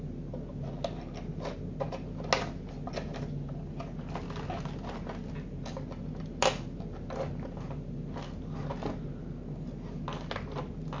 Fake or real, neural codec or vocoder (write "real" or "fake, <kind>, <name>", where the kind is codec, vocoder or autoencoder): real